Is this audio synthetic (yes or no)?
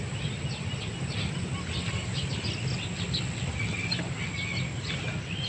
no